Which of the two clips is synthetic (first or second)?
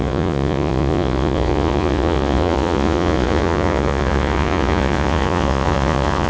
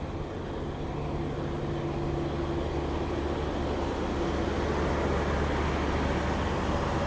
first